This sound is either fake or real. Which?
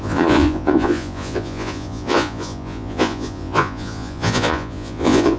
fake